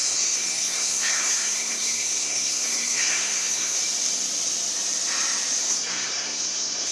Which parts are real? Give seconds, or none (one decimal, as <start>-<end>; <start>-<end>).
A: 3.8-5.6